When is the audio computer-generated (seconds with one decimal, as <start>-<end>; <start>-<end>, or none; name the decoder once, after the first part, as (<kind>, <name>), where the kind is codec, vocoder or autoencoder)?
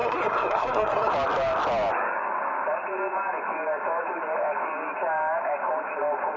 0.0-1.1 (codec, SNAC)